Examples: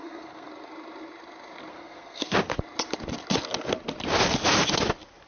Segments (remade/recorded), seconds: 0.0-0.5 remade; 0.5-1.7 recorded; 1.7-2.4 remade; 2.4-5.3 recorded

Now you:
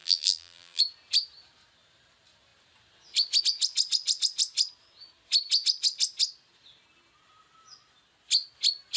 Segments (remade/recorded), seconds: 0.0-0.8 remade; 0.8-9.0 recorded

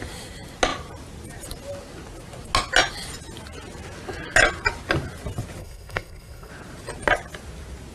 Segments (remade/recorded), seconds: 0.0-5.6 recorded; 5.6-6.5 remade; 6.5-7.9 recorded

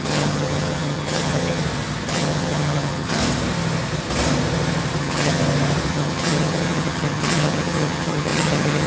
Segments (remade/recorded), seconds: 0.0-1.6 remade; 1.6-2.1 recorded; 2.1-3.2 remade; 3.2-5.0 recorded; 5.0-5.4 remade; 5.4-5.9 recorded; 5.9-8.9 remade

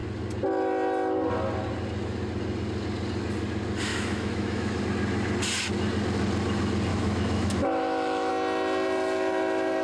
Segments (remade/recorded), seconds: 0.0-3.9 recorded; 3.9-4.8 remade; 4.8-6.9 recorded; 6.9-8.3 remade; 8.3-9.8 recorded

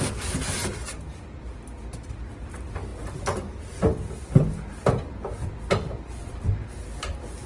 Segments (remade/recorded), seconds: 0.0-7.5 recorded

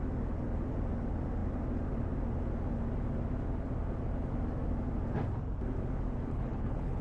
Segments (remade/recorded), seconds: 0.0-6.3 recorded; 6.3-7.0 remade

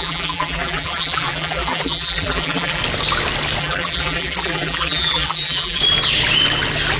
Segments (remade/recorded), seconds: 0.0-2.8 remade; 2.8-3.6 recorded; 3.6-5.8 remade; 5.8-7.0 recorded